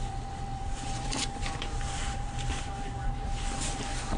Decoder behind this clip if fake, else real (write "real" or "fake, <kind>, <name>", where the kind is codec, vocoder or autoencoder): fake, vocoder, BigVGAN v2